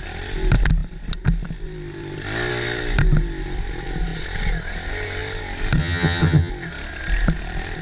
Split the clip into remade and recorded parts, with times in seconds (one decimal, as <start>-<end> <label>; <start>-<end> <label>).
0.0-5.8 recorded; 5.8-6.5 remade; 6.5-7.8 recorded